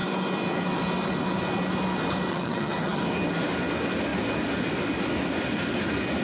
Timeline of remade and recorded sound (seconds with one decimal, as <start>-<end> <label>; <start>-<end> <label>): 0.0-2.3 recorded; 2.3-3.0 remade; 3.0-6.2 recorded